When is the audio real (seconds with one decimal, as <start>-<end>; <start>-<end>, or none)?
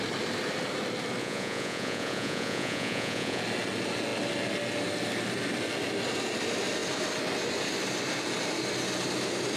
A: 0.0-1.2; 3.4-9.6